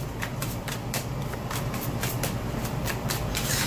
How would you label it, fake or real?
real